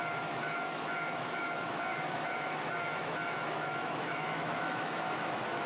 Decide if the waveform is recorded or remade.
remade